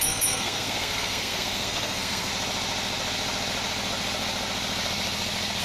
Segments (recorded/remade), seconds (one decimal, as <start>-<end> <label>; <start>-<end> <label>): 0.0-2.3 remade; 2.3-5.6 recorded